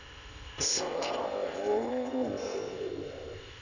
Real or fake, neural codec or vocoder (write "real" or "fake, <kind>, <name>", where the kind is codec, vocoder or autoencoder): fake, codec, ZipCodec